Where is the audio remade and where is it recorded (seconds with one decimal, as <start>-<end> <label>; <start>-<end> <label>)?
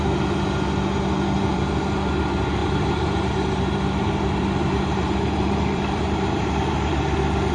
0.0-1.5 recorded; 1.5-2.2 remade; 2.2-2.6 recorded; 2.6-6.9 remade; 6.9-7.5 recorded